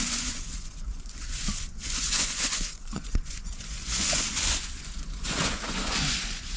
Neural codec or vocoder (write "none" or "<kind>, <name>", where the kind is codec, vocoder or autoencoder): vocoder, Vocos